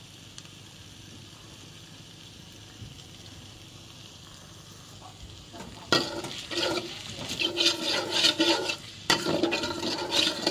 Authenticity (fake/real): real